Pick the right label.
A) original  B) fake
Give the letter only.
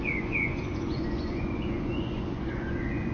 B